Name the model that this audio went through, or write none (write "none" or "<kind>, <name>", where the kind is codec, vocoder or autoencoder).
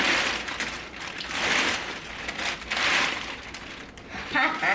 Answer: none